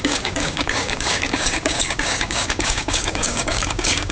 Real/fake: fake